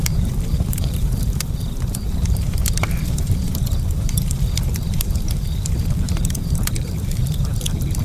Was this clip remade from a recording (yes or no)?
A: yes